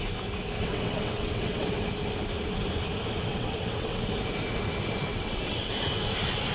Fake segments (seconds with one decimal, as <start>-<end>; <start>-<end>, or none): 0.6-1.9; 3.3-4.1; 5.1-5.7